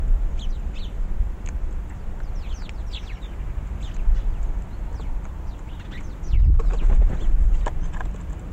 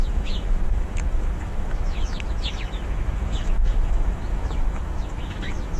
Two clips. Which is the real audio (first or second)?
first